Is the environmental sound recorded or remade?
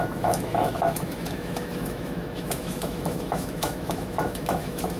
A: remade